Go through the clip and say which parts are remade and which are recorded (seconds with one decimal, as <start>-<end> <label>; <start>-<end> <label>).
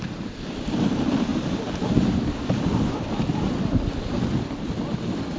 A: 0.0-5.4 recorded